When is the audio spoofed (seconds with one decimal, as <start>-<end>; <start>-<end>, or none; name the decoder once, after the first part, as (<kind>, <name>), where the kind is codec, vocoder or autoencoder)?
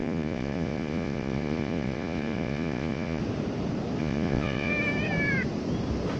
0.0-3.2 (vocoder, Vocos); 4.0-4.7